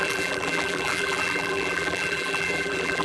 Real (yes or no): no